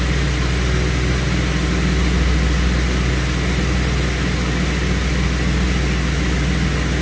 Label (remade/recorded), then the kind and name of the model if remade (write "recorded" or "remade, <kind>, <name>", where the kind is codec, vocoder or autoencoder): recorded